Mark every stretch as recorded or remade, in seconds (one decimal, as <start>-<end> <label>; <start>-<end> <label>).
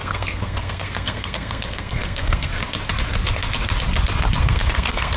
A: 0.0-2.5 remade; 2.5-4.4 recorded; 4.4-5.2 remade